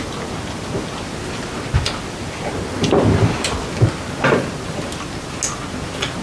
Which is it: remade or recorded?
recorded